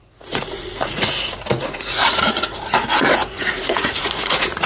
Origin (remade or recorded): remade